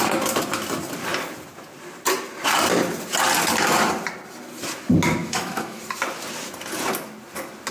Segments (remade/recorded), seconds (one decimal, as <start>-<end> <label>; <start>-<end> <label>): 0.0-5.2 recorded; 5.2-5.8 remade; 5.8-7.7 recorded